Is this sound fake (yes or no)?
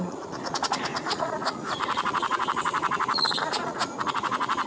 yes